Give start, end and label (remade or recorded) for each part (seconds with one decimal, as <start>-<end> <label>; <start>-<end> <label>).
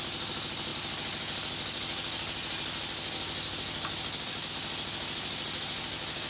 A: 0.0-6.3 recorded